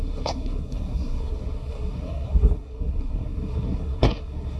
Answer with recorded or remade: remade